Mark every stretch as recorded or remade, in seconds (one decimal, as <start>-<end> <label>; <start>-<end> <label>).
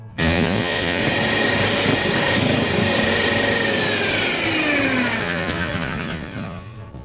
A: 0.0-1.0 remade; 1.0-5.2 recorded; 5.2-7.0 remade